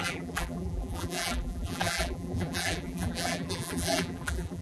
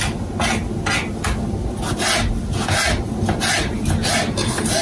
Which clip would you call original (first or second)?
second